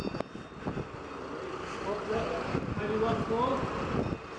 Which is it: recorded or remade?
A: recorded